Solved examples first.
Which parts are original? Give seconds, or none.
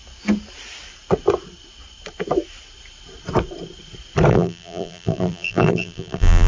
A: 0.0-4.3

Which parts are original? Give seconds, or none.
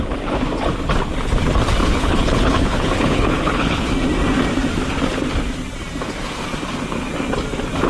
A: 0.0-1.8; 3.9-7.9